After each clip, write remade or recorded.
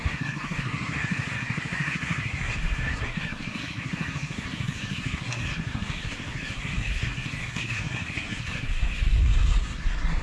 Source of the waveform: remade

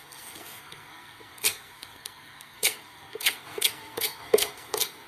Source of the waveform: remade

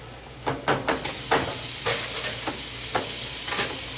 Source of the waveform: recorded